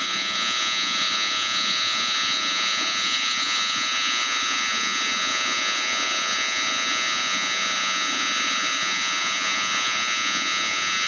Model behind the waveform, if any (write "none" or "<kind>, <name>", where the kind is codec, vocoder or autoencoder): vocoder, Vocos